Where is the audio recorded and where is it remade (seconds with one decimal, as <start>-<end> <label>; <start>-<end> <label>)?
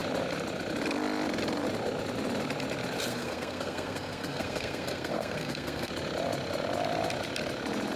0.0-3.1 recorded; 3.1-5.9 remade; 5.9-8.0 recorded